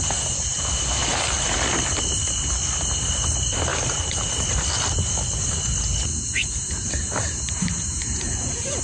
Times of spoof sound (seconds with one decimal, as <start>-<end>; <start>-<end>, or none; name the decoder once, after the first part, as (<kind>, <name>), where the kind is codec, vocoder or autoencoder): 3.7-4.3 (vocoder, BigVGAN v2); 6.1-8.8